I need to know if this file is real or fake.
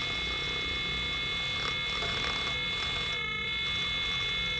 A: real